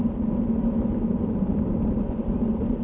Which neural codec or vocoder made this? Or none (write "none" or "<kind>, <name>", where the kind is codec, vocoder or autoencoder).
none